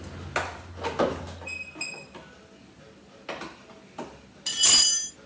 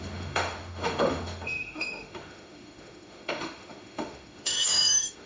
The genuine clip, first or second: first